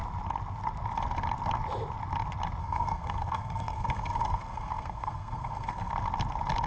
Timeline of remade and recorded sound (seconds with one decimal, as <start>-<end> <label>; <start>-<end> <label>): 0.0-2.6 recorded; 2.6-5.9 remade; 5.9-6.7 recorded